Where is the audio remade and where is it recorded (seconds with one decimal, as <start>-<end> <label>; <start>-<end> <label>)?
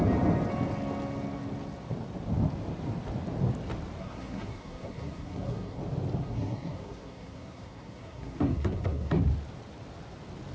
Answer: 0.0-4.0 recorded; 4.0-5.8 remade; 5.8-6.2 recorded; 6.2-9.2 remade; 9.2-10.5 recorded